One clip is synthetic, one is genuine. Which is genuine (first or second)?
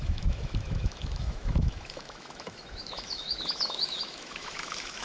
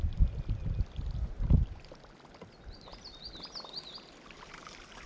second